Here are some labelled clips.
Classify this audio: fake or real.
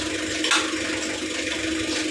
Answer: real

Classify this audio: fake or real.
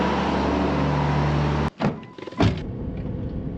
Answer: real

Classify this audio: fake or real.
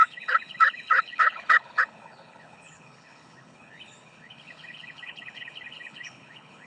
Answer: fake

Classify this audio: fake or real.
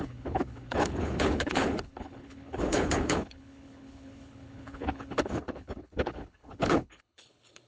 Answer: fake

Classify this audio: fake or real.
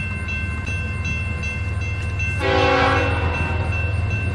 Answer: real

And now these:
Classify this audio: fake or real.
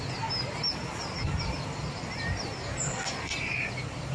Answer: real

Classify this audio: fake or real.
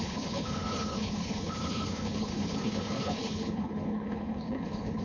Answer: fake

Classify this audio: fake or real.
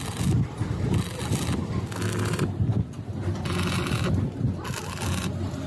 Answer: real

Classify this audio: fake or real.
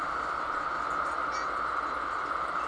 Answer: real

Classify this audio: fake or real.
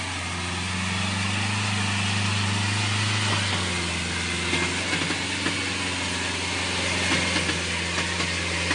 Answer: real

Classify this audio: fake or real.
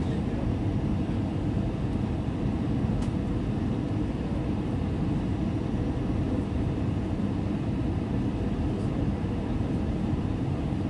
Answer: real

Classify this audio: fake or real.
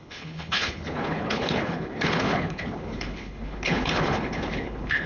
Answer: fake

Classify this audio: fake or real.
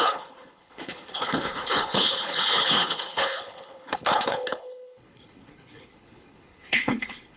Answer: fake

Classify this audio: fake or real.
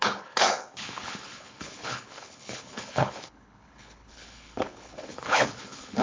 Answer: fake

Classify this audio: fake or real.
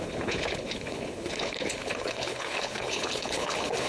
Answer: fake